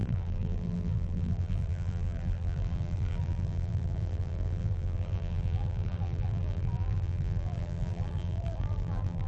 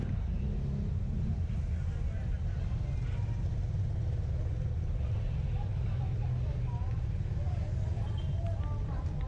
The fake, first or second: first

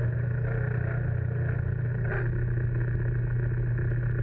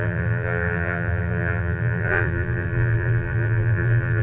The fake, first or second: second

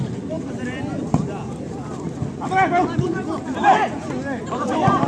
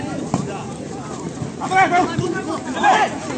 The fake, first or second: second